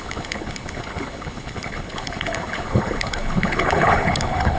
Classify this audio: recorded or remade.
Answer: remade